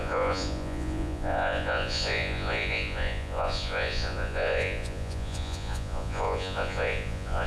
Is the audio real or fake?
fake